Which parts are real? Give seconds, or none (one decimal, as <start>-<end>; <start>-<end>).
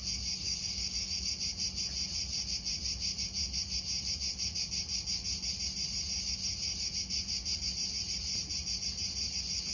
0.0-0.4; 1.3-9.7